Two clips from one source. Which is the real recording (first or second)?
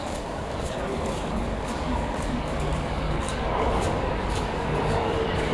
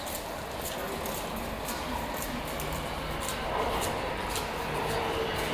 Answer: second